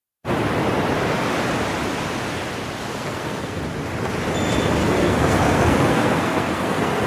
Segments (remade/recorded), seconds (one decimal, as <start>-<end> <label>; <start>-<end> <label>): 0.0-2.9 recorded; 2.9-3.6 remade; 3.6-4.8 recorded; 4.8-7.1 remade